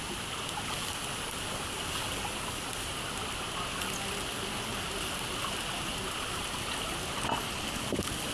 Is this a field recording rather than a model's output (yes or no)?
yes